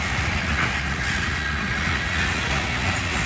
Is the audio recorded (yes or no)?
no